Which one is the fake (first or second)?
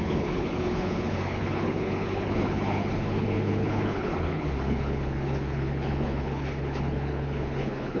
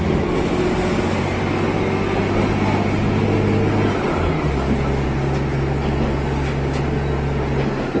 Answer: first